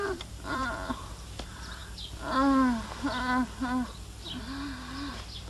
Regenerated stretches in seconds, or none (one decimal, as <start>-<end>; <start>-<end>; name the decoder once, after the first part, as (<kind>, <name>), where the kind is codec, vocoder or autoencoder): 0.0-1.8 (vocoder, BigVGAN v2); 5.1-5.5